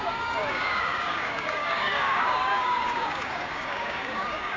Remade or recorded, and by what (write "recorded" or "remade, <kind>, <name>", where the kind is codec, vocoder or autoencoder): remade, codec, DAC